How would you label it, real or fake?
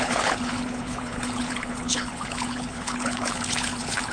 fake